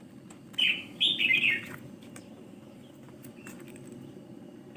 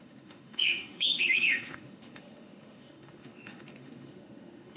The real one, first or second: first